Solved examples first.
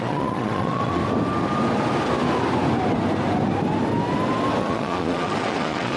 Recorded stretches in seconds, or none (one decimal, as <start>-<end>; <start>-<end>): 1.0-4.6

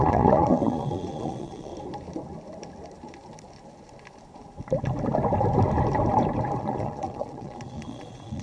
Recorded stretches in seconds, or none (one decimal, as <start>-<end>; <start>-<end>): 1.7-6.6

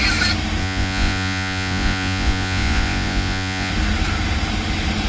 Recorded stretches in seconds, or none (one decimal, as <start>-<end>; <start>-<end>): 0.0-0.6; 3.7-5.1

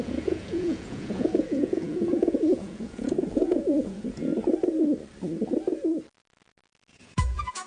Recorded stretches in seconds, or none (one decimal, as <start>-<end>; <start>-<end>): 4.3-6.9

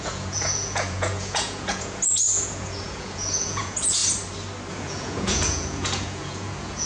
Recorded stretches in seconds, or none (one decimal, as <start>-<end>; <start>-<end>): 4.0-4.7

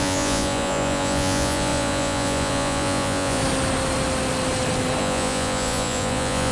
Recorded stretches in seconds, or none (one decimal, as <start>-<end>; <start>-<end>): 3.4-5.0